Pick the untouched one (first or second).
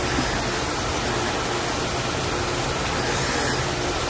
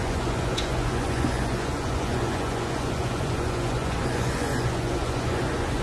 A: first